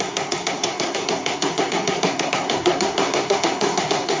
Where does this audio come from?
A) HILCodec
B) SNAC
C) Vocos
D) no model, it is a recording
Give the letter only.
B